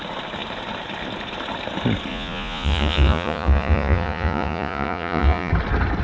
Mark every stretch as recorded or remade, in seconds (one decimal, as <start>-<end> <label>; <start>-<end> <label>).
0.0-2.1 recorded; 2.1-5.5 remade; 5.5-6.0 recorded